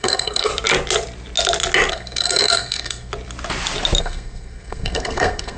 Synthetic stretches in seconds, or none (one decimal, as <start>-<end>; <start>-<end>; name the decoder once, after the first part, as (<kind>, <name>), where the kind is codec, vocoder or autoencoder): 0.0-0.5 (codec, SNAC); 1.9-3.1; 4.0-5.6